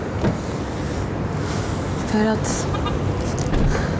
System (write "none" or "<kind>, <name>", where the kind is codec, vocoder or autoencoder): none